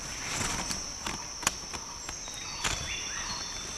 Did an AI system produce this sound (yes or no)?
no